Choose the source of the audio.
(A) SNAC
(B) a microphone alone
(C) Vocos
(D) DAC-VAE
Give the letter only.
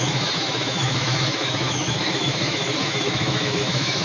D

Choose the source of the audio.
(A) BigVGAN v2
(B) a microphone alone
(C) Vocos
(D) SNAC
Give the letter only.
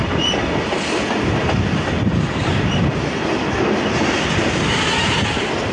B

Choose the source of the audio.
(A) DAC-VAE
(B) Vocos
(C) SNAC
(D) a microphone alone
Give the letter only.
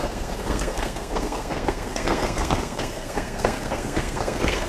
C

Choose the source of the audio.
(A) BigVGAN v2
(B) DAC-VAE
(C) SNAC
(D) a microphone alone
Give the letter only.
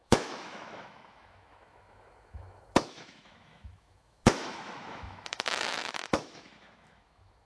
B